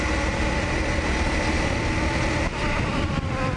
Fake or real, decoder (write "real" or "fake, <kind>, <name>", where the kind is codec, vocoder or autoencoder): fake, vocoder, BigVGAN v2